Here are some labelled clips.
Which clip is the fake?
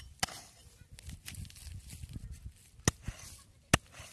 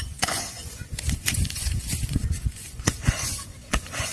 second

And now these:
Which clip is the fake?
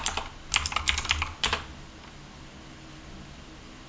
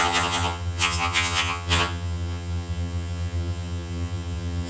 second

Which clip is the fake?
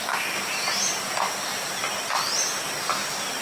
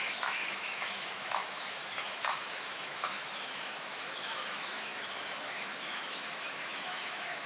second